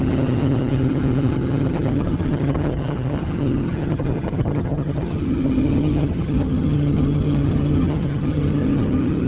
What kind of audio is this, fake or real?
fake